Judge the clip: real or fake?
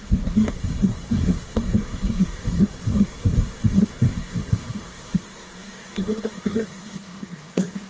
fake